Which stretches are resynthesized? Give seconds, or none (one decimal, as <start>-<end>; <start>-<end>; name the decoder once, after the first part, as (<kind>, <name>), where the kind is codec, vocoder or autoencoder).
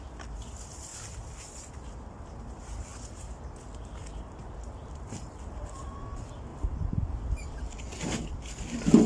none